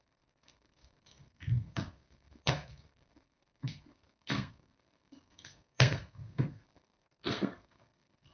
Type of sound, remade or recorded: remade